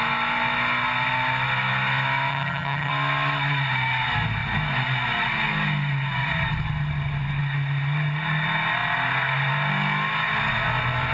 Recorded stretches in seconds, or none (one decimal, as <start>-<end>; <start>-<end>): 0.0-2.3; 2.9-11.1